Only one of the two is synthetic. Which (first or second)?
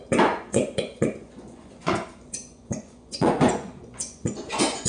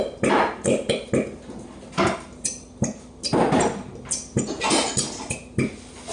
first